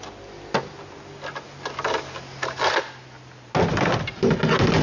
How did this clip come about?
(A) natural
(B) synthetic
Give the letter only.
A